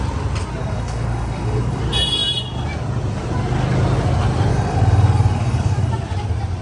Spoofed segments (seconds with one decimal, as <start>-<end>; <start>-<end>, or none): 0.6-1.8; 4.5-5.9